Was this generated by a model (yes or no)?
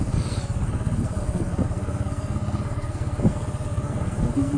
yes